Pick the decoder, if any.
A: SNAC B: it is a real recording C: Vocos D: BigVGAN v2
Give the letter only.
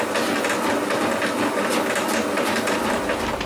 B